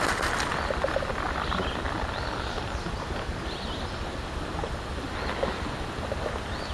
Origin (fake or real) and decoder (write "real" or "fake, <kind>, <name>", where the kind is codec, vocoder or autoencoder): real